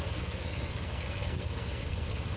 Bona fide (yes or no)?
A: no